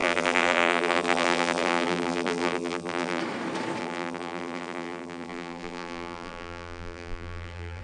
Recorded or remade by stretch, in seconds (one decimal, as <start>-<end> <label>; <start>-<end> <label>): 0.0-3.2 remade; 3.2-3.8 recorded; 3.8-7.8 remade